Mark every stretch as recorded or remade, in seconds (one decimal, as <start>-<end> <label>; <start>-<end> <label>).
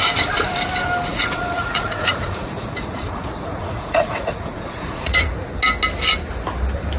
0.0-1.1 recorded; 1.1-5.3 remade; 5.3-7.0 recorded